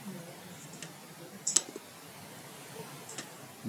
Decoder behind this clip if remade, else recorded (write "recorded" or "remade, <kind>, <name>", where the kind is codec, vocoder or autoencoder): recorded